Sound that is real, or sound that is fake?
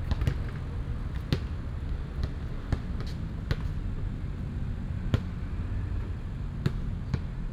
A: real